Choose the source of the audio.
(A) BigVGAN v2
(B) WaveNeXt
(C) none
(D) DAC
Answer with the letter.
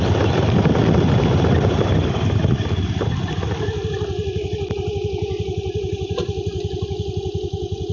C